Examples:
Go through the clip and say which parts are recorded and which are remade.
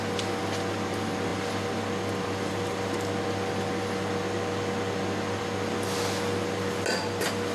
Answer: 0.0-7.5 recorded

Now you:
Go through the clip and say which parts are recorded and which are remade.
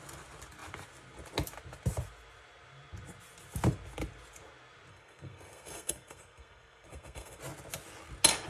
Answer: 0.0-4.9 recorded; 4.9-7.4 remade; 7.4-8.5 recorded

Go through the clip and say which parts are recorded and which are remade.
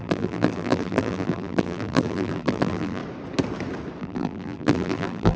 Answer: 0.0-3.0 remade; 3.0-4.0 recorded; 4.0-5.4 remade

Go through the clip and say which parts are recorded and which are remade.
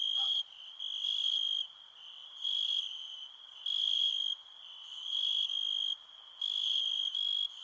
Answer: 0.0-5.6 remade; 5.6-6.5 recorded; 6.5-7.6 remade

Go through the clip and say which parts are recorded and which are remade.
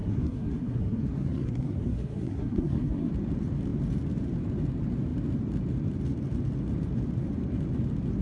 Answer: 0.0-3.1 remade; 3.1-8.2 recorded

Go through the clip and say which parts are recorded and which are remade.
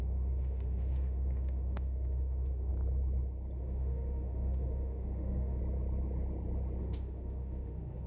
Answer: 0.0-2.7 remade; 2.7-3.6 recorded; 3.6-5.6 remade; 5.6-6.8 recorded; 6.8-8.1 remade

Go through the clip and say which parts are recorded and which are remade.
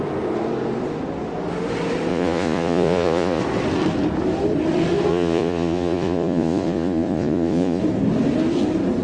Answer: 0.0-2.1 recorded; 2.1-3.4 remade; 3.4-5.1 recorded; 5.1-7.8 remade; 7.8-9.0 recorded